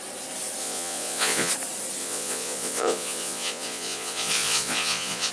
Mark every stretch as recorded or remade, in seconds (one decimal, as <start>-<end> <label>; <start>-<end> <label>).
0.0-0.6 recorded; 0.6-1.5 remade; 1.5-2.0 recorded; 2.0-5.3 remade